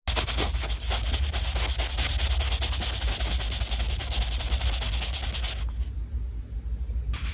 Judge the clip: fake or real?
real